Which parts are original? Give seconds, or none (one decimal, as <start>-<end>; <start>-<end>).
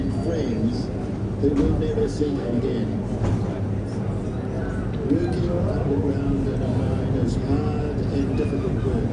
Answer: 0.0-2.0; 2.6-9.1